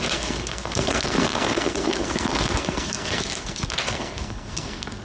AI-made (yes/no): yes